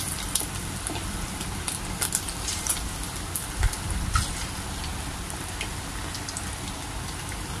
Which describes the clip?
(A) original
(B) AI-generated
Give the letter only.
A